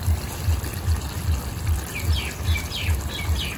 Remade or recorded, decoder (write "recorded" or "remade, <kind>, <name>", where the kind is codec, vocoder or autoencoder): recorded